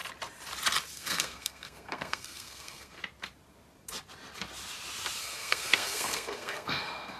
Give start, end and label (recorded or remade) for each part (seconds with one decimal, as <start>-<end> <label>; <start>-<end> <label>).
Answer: 0.0-0.9 recorded; 0.9-3.0 remade; 3.0-5.2 recorded; 5.2-7.2 remade